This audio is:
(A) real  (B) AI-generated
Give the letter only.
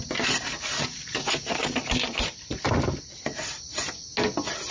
A